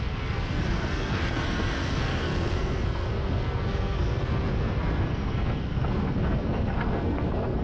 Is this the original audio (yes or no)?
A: no